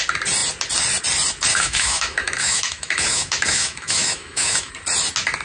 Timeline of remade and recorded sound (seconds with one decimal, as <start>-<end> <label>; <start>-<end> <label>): 0.0-1.5 recorded; 1.5-4.7 remade; 4.7-5.4 recorded